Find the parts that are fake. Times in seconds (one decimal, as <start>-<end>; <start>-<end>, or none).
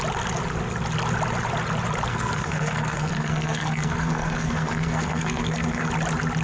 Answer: 2.1-5.9